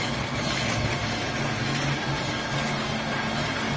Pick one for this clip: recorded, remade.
recorded